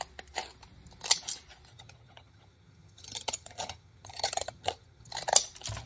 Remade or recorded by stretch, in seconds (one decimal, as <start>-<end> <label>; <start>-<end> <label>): 0.0-1.7 recorded; 1.7-5.1 remade; 5.1-5.9 recorded